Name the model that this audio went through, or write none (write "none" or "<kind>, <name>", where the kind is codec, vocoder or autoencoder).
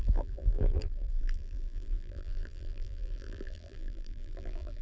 vocoder, BigVGAN v2